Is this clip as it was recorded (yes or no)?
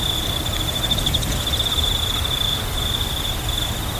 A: yes